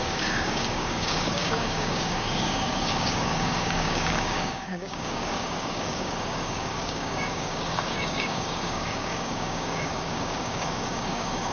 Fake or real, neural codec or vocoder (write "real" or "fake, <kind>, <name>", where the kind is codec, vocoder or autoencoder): fake, codec, DAC